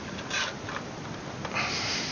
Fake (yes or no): no